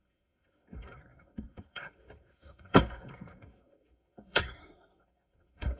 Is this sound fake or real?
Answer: fake